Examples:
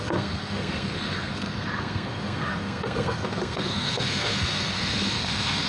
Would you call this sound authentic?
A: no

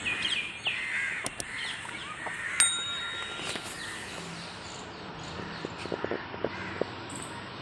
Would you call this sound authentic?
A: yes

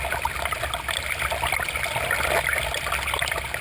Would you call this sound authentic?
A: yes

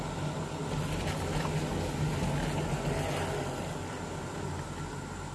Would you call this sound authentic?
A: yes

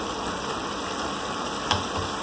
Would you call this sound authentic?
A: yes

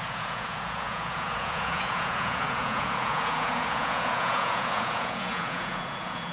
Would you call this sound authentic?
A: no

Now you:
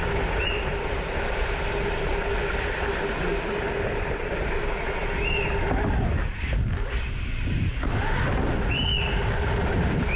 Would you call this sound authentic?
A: yes